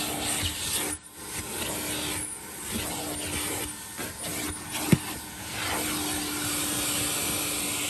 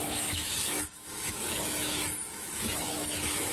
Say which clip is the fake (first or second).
second